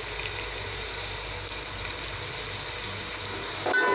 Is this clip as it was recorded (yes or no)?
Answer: yes